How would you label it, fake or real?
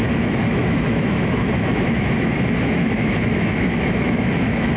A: fake